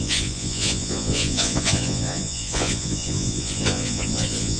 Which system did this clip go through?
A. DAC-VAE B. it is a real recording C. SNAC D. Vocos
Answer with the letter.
D